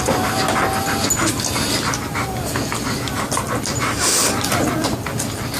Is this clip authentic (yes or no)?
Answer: yes